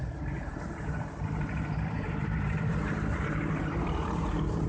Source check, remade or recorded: remade